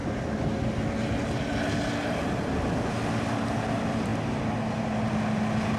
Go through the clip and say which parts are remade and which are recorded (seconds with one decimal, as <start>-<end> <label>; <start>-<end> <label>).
0.0-5.8 recorded

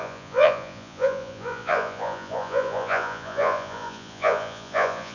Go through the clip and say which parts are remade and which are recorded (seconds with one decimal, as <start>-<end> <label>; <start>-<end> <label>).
0.0-5.1 remade

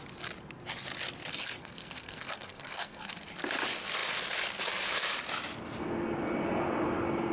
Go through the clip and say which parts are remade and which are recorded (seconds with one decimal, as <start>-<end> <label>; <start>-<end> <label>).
0.0-1.3 recorded; 1.3-3.1 remade; 3.1-7.3 recorded

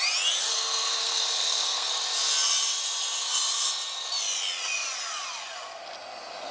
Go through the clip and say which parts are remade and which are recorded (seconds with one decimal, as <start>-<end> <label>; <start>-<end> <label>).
0.0-0.4 recorded; 0.4-1.9 remade; 1.9-6.5 recorded

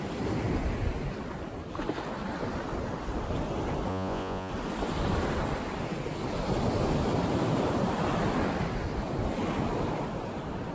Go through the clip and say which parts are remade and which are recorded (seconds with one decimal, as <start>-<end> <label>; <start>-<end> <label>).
0.0-3.9 recorded; 3.9-4.5 remade; 4.5-10.7 recorded

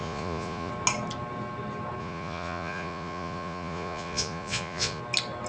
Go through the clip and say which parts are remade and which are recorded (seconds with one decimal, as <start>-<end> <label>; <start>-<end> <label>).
0.0-0.7 remade; 0.7-2.0 recorded; 2.0-5.0 remade; 5.0-5.5 recorded

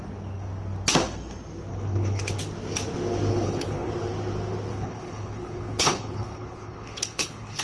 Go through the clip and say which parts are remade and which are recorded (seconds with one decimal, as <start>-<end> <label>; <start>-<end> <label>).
0.0-1.7 recorded; 1.7-2.4 remade; 2.4-3.3 recorded; 3.3-3.9 remade; 3.9-4.7 recorded; 4.7-7.6 remade

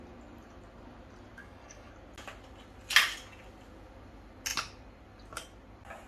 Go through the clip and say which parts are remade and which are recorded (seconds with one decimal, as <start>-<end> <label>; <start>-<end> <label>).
0.0-1.4 recorded; 1.4-1.9 remade; 1.9-6.1 recorded